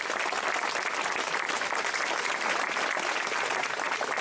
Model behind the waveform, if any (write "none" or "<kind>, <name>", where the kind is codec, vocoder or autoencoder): none